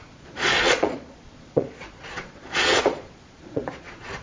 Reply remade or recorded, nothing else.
remade